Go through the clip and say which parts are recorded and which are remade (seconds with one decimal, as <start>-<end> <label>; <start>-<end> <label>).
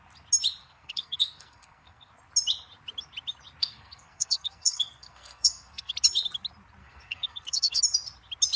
0.0-0.6 recorded; 0.6-2.1 remade; 2.1-3.6 recorded; 3.6-5.9 remade; 5.9-6.8 recorded; 6.8-7.8 remade; 7.8-8.6 recorded